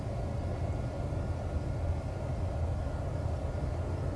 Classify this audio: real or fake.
real